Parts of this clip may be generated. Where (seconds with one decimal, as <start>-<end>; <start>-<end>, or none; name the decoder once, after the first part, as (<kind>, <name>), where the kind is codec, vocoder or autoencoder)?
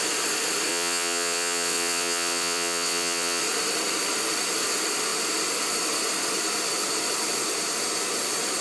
0.7-3.4 (vocoder, WaveNeXt)